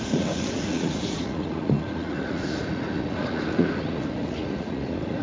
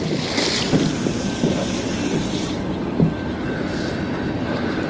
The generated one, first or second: first